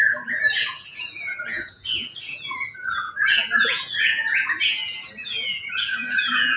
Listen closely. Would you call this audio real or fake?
fake